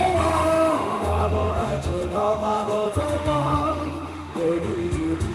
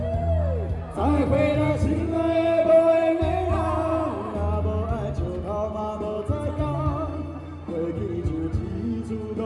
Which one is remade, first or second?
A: first